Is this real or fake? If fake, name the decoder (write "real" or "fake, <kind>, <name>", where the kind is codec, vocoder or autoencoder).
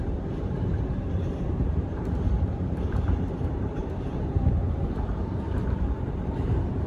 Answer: fake, vocoder, BigVGAN v2